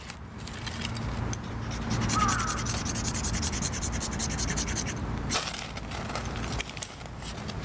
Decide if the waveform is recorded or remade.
recorded